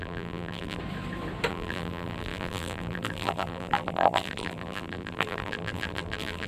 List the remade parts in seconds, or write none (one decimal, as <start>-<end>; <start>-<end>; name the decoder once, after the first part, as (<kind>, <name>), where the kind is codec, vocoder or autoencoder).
0.0-0.8 (vocoder, BigVGAN v2); 1.5-6.5